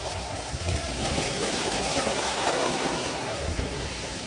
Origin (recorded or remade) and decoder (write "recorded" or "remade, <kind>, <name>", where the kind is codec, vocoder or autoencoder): remade, codec, SNAC